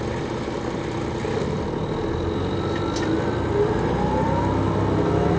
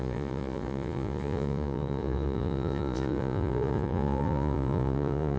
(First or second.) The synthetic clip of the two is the second